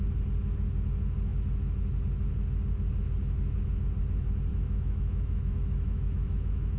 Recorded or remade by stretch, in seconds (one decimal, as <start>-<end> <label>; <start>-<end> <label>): 0.0-4.5 recorded; 4.5-6.8 remade